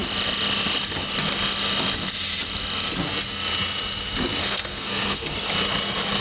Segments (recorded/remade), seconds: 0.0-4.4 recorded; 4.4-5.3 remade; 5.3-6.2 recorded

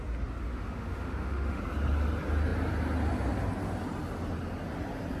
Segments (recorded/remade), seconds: 0.0-0.5 recorded; 0.5-1.6 remade; 1.6-5.2 recorded

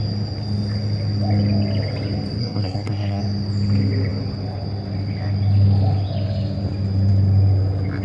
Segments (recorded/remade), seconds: 0.0-2.4 recorded; 2.4-3.2 remade; 3.2-8.0 recorded